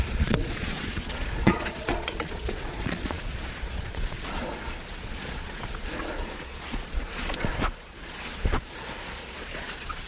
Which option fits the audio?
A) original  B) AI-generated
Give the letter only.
B